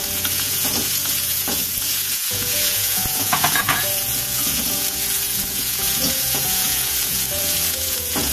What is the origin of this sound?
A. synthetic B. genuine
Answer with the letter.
A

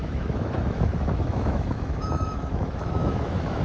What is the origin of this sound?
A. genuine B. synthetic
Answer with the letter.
B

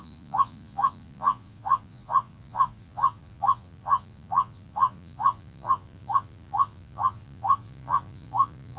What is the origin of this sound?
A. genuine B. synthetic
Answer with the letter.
B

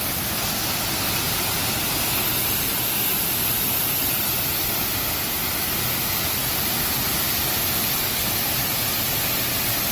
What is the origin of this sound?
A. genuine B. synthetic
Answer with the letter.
A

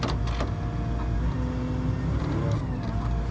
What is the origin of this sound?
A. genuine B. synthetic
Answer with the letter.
A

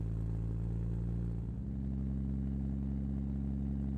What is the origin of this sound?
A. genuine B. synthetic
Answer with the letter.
A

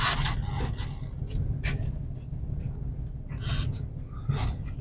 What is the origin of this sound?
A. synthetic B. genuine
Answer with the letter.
B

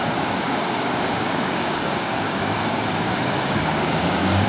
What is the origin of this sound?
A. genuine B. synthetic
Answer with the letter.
B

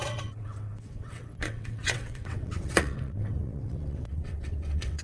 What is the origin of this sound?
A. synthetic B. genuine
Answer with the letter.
A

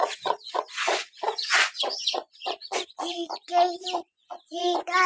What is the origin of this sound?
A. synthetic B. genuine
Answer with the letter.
A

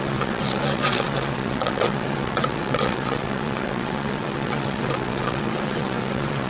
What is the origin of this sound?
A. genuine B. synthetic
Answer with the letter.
B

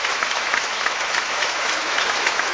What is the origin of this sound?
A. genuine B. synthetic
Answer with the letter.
B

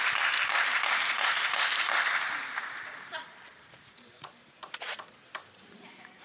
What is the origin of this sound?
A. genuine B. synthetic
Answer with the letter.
B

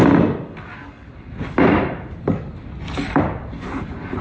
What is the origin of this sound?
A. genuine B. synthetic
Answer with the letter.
A